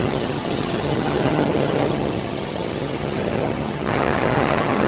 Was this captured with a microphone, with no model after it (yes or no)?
no